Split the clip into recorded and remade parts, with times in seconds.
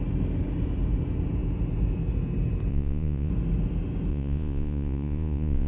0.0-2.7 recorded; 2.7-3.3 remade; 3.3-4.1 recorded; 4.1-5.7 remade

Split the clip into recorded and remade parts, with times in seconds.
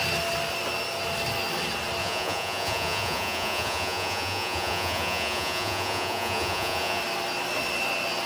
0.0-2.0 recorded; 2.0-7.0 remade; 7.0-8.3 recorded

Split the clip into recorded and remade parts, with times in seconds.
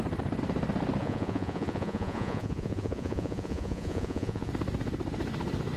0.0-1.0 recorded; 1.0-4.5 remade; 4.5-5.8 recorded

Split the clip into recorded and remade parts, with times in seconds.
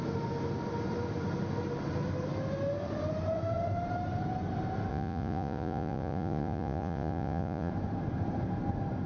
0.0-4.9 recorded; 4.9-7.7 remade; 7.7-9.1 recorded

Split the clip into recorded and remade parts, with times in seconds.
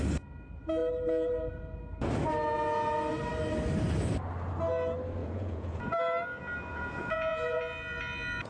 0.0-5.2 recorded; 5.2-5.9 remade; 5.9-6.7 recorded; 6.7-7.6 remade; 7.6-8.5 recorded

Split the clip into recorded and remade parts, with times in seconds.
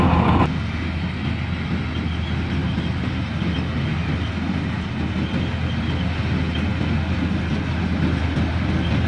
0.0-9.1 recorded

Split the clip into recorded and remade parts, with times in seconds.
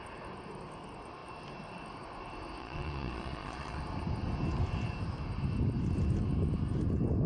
0.0-2.6 recorded; 2.6-3.8 remade; 3.8-7.3 recorded